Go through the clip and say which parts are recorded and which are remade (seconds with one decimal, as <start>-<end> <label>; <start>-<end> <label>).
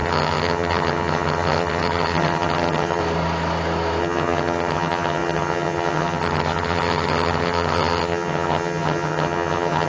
0.0-3.0 remade; 3.0-4.0 recorded; 4.0-9.9 remade